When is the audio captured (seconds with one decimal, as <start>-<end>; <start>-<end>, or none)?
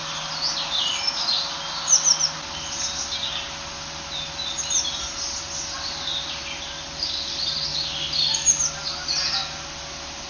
0.0-10.3